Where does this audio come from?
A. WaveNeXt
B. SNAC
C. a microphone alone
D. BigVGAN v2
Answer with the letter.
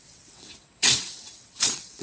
A